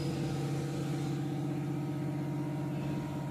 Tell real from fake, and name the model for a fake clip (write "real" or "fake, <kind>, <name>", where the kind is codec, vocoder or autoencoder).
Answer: real